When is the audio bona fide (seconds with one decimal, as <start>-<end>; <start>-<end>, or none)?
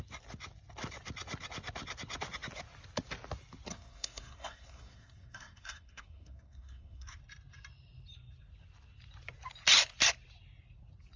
0.0-3.7; 7.2-11.2